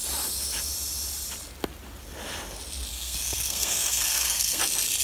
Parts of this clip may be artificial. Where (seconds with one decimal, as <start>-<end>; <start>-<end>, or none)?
2.9-4.6

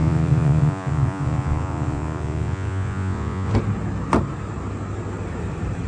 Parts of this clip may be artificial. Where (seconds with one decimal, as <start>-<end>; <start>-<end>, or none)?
0.0-3.5

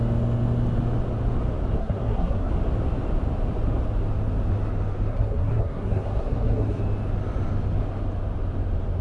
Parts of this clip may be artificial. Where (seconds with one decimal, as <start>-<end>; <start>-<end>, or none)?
1.8-2.5; 5.1-6.8

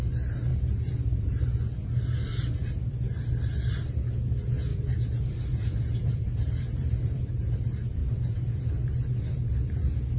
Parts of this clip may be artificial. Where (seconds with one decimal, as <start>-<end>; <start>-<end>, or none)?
4.7-7.6; 8.0-8.7

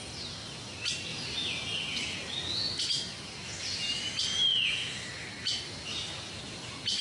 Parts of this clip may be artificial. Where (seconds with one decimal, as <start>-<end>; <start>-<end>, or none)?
none

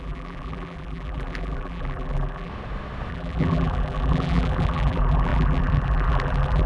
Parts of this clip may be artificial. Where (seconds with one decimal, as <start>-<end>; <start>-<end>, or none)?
0.0-2.5; 3.1-6.7

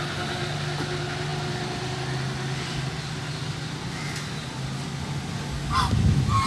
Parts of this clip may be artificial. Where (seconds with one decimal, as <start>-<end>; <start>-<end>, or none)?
none